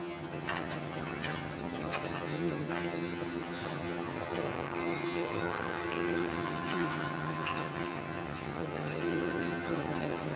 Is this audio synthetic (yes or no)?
yes